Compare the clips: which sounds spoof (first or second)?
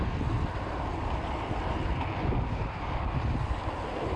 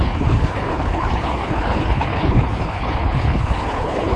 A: second